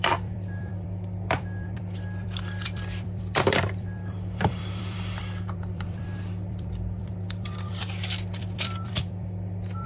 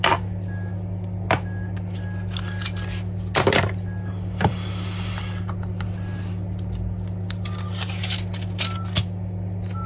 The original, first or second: second